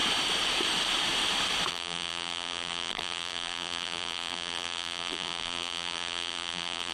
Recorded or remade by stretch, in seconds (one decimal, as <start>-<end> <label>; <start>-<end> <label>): 0.0-1.7 recorded; 1.7-6.9 remade